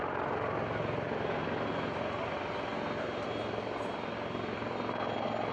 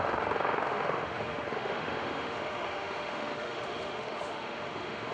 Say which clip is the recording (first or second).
first